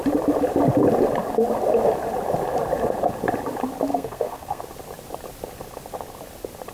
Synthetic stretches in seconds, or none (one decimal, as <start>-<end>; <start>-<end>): 3.9-4.6